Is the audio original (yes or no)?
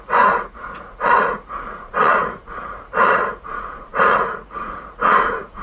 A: no